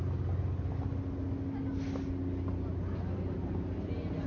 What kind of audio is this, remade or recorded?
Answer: recorded